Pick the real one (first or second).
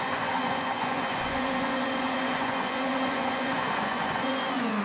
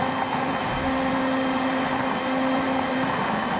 second